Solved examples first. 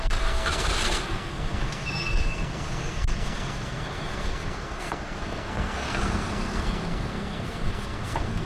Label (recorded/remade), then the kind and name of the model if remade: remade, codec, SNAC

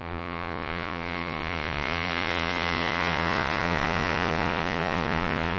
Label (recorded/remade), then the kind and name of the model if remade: remade, vocoder, Vocos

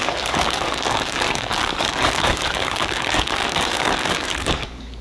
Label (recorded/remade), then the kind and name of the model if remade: remade, codec, DAC